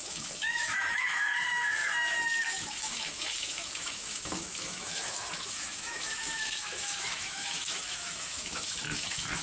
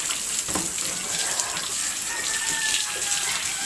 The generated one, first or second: first